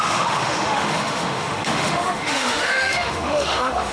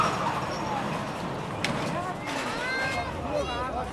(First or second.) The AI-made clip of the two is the first